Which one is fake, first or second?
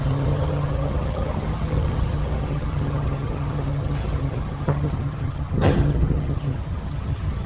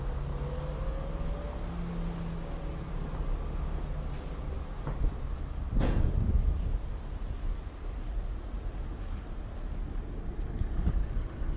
first